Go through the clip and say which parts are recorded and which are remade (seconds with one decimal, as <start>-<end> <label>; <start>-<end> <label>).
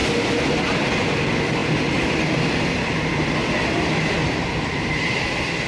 0.0-5.7 recorded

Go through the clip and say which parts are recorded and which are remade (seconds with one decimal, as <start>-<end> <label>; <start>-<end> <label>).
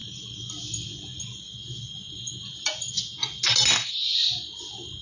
0.0-5.0 recorded